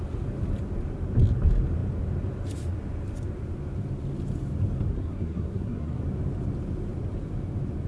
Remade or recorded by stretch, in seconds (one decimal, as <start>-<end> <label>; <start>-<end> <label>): 0.0-4.9 recorded; 4.9-6.0 remade; 6.0-7.9 recorded